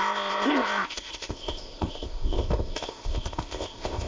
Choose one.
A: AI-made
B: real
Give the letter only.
A